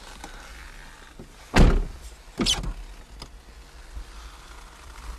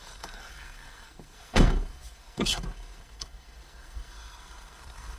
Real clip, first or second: first